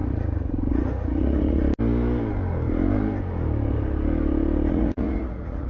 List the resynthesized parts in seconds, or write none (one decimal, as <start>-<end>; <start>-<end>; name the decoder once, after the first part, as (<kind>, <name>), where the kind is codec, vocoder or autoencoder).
0.0-1.6 (vocoder, Vocos); 4.7-5.7